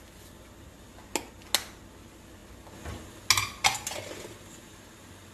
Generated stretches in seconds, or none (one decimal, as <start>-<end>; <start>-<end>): none